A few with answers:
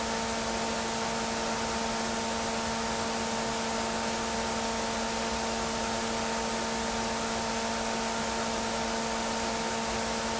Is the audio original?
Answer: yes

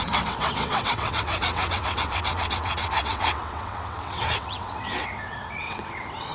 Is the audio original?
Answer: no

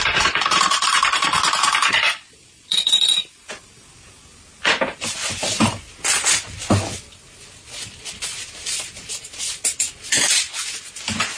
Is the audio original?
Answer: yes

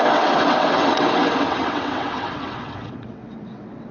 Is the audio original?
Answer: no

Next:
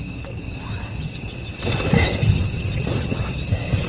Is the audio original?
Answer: no